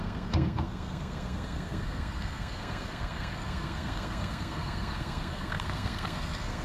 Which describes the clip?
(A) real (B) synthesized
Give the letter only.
B